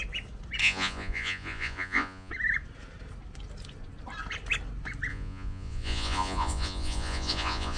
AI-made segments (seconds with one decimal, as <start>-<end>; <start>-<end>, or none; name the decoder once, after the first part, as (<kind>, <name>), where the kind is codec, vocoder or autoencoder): 0.6-2.3 (vocoder, Vocos); 5.1-7.8